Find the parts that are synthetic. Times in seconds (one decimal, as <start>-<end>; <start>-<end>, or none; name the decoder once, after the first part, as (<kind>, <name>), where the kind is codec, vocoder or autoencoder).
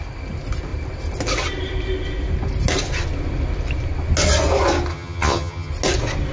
4.9-5.7 (vocoder, HiFi-GAN)